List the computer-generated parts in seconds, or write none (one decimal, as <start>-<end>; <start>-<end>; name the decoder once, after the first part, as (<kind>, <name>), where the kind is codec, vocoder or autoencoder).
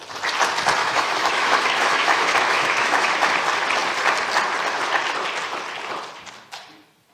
0.8-3.3 (autoencoder, DAC-VAE)